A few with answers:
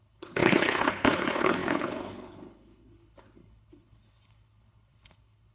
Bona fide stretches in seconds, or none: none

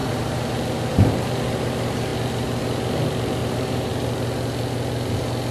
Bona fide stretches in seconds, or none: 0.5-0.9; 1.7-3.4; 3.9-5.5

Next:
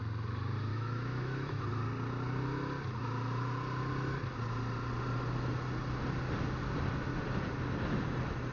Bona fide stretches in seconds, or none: 0.0-0.7; 1.6-8.5